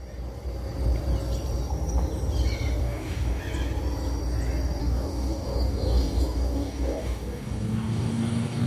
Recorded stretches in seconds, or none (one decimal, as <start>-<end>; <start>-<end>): 0.0-2.8; 3.4-4.8